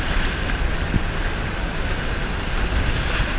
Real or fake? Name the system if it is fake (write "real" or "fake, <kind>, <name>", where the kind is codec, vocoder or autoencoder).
real